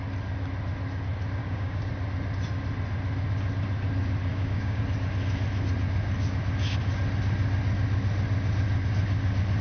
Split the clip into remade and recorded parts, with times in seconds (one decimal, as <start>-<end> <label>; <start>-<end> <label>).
0.0-1.4 recorded; 1.4-1.9 remade; 1.9-4.3 recorded; 4.3-4.8 remade; 4.8-9.6 recorded